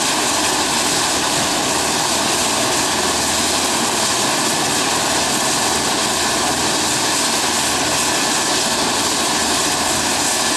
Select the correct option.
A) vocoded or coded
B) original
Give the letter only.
B